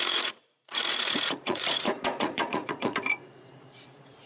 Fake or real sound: fake